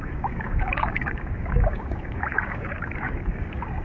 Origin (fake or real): fake